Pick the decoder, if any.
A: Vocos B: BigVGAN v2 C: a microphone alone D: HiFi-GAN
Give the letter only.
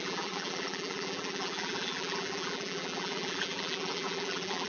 B